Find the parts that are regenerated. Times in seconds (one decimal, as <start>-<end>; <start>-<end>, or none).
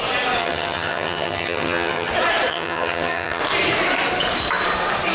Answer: 0.4-2.1; 2.5-3.4